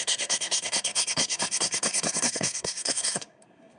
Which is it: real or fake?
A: fake